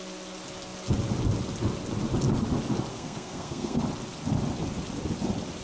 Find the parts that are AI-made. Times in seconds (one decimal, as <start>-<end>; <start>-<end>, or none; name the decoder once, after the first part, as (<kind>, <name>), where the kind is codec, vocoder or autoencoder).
2.9-3.8 (codec, SNAC)